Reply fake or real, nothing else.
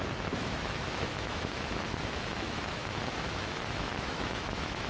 fake